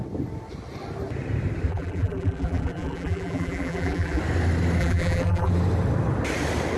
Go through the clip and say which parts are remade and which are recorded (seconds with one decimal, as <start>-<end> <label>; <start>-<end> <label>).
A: 0.0-1.7 recorded; 1.7-4.2 remade; 4.2-4.8 recorded; 4.8-5.5 remade; 5.5-6.8 recorded